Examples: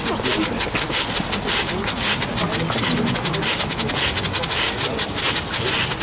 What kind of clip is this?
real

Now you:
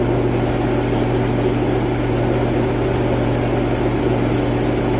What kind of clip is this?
real